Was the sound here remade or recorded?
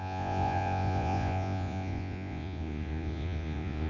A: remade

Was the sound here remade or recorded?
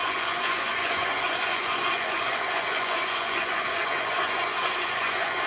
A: remade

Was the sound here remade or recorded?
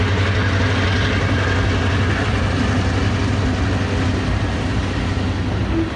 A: recorded